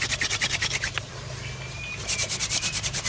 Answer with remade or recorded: recorded